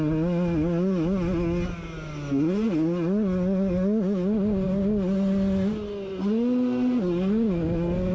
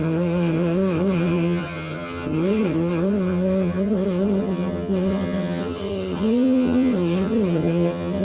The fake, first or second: second